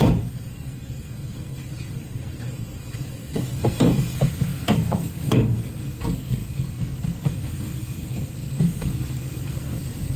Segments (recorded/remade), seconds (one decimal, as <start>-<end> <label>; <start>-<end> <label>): 0.0-10.2 remade